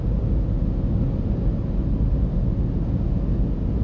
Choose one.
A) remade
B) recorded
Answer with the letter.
B